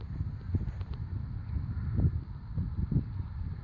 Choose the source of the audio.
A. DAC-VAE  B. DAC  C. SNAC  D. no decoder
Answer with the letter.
D